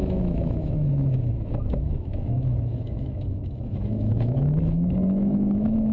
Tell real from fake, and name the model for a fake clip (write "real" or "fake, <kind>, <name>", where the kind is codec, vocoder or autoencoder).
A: fake, autoencoder, DAC-VAE